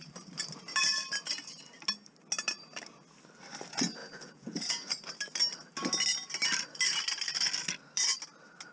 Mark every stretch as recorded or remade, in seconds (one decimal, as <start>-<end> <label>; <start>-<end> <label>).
0.0-4.0 recorded; 4.0-4.9 remade; 4.9-8.7 recorded